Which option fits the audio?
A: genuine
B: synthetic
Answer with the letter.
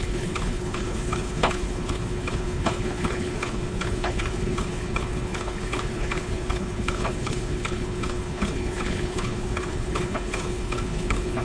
B